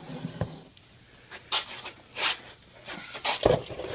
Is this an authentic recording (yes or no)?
yes